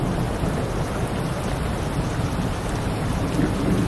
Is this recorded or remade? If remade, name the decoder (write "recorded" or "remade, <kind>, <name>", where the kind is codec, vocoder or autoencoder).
recorded